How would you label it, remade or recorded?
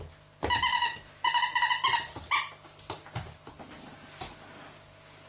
recorded